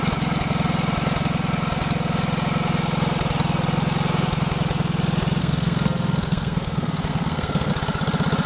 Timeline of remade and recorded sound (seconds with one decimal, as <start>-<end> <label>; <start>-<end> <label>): 0.0-5.4 recorded; 5.4-7.7 remade; 7.7-8.5 recorded